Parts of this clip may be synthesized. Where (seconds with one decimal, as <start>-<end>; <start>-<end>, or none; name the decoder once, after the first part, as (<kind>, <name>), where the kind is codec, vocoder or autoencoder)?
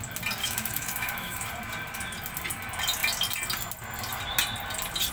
0.4-1.5 (autoencoder, DAC-VAE)